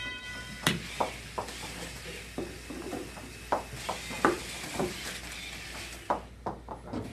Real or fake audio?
real